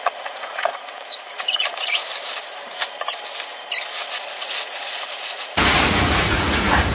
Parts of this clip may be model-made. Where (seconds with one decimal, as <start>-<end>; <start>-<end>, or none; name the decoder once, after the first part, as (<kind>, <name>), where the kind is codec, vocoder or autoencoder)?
0.0-2.0 (vocoder, Vocos); 3.9-6.9

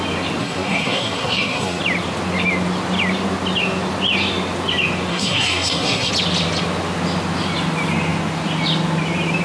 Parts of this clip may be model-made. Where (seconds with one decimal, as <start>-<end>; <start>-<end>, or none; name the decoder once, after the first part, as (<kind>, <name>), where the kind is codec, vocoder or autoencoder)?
0.4-1.8 (codec, SNAC); 5.1-6.1

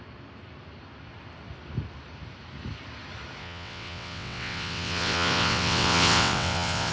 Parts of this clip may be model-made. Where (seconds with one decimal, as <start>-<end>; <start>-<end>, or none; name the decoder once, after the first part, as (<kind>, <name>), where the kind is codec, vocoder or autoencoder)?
3.4-6.9 (vocoder, WaveNeXt)

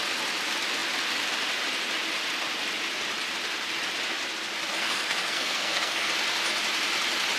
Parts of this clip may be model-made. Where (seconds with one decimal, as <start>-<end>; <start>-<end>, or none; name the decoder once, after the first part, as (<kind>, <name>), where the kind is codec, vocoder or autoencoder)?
4.7-6.1 (codec, SNAC)

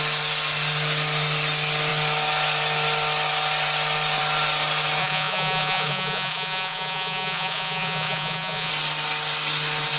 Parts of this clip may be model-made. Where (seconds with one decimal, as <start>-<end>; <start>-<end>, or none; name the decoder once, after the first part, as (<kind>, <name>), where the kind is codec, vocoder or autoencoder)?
5.0-8.7 (vocoder, Vocos)